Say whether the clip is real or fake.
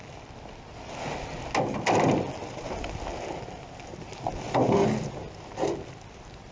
real